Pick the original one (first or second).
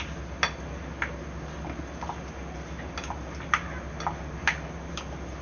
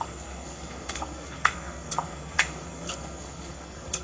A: first